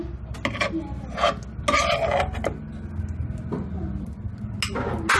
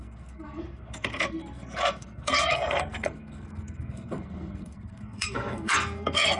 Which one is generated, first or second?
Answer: second